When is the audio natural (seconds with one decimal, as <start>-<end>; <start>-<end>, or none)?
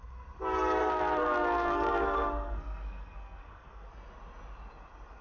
0.0-0.8; 3.9-5.2